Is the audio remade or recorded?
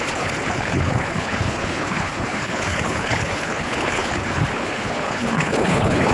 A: remade